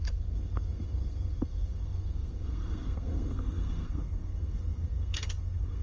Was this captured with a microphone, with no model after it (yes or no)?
no